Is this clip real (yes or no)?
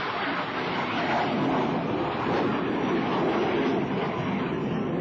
yes